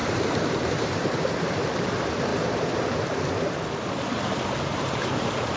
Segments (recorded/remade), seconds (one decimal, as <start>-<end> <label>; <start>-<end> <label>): 0.0-1.9 remade; 1.9-2.3 recorded; 2.3-2.9 remade; 2.9-4.7 recorded; 4.7-5.6 remade

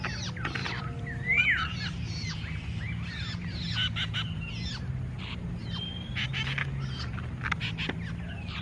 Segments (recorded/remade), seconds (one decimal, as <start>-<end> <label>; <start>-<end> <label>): 0.0-8.6 recorded

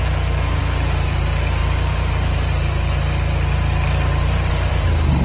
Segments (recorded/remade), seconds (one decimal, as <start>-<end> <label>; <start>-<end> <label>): 0.0-0.6 recorded; 0.6-1.2 remade; 1.2-1.6 recorded; 1.6-4.7 remade; 4.7-5.2 recorded

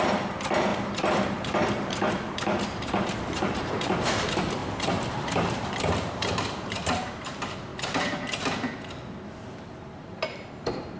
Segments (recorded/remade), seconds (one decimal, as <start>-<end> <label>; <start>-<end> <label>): 0.0-7.7 remade; 7.7-9.5 recorded; 9.5-11.0 remade

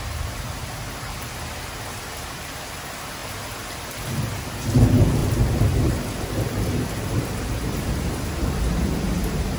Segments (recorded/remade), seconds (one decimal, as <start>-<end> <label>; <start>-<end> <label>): 0.0-3.2 recorded; 3.2-4.4 remade; 4.4-5.2 recorded; 5.2-7.6 remade; 7.6-9.6 recorded